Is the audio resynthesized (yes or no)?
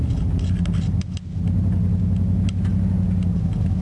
no